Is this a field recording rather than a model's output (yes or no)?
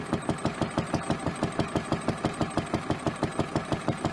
yes